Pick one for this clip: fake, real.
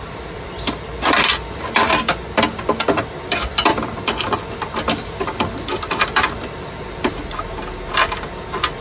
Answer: real